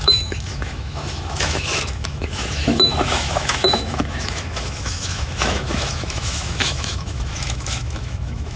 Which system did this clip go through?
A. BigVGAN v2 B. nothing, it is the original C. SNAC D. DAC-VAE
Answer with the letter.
D